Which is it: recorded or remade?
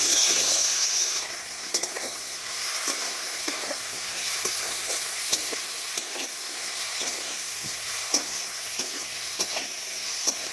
remade